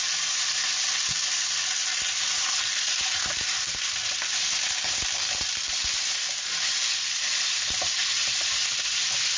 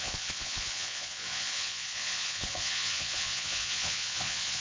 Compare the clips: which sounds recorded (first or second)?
first